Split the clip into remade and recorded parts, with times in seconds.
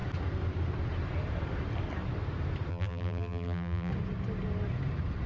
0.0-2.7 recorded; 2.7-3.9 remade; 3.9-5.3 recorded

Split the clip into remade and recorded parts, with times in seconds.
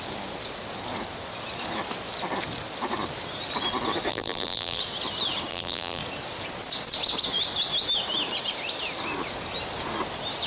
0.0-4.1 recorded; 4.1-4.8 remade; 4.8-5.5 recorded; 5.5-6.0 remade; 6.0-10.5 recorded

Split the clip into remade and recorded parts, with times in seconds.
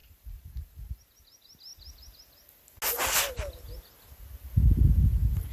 0.0-0.9 remade; 0.9-5.5 recorded